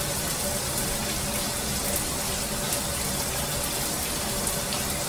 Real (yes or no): yes